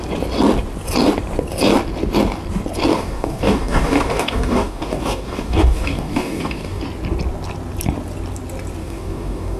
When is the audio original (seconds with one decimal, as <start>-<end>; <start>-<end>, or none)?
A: 0.0-2.9; 6.8-8.8